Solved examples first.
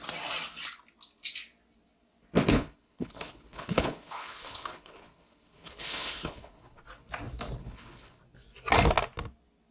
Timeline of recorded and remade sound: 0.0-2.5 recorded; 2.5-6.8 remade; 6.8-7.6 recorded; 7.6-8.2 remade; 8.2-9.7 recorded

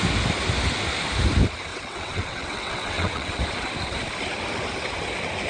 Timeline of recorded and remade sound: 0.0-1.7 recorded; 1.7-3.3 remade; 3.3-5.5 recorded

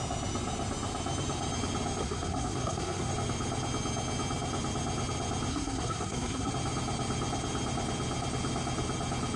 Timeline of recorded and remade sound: 0.0-2.0 recorded; 2.0-3.1 remade; 3.1-5.5 recorded; 5.5-6.5 remade; 6.5-9.4 recorded